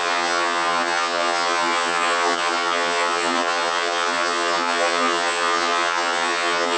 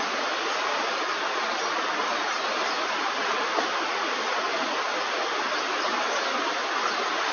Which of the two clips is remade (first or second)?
first